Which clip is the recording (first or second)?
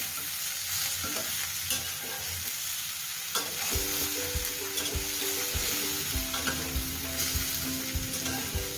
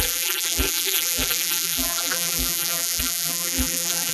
first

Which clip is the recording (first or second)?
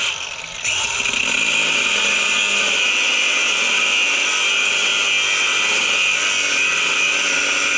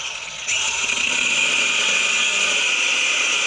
first